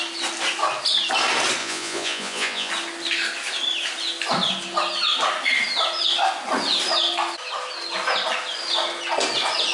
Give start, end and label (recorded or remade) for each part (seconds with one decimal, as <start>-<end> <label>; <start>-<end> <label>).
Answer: 0.0-1.6 recorded; 1.6-2.7 remade; 2.7-9.7 recorded